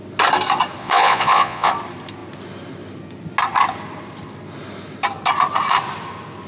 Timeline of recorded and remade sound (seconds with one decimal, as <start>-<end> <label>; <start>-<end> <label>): 0.0-0.8 recorded; 0.8-1.7 remade; 1.7-6.5 recorded